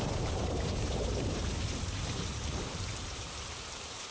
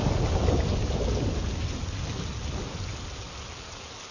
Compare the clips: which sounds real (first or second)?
second